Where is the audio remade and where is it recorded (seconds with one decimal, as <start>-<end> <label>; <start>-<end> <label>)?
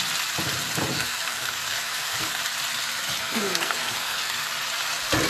0.0-0.9 recorded; 0.9-2.4 remade; 2.4-3.2 recorded; 3.2-4.5 remade; 4.5-5.3 recorded